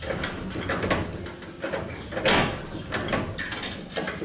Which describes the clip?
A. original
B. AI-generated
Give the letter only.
A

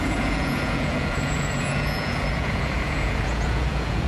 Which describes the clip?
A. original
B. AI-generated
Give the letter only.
B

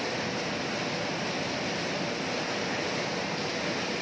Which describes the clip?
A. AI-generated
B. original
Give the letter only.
B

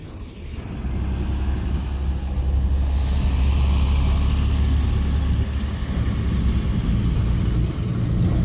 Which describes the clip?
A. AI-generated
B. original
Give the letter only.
B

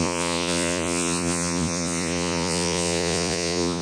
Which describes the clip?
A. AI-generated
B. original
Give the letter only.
A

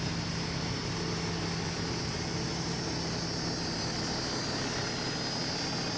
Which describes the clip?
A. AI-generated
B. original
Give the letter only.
B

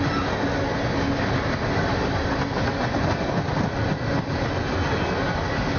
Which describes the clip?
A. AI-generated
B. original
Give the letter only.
B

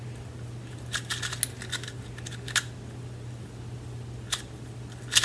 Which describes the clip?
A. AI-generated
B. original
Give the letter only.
B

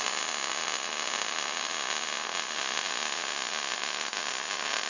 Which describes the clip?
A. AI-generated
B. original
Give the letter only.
B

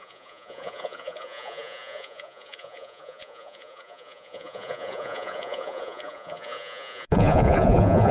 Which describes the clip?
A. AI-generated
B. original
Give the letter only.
A